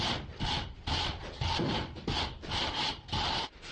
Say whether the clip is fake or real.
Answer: real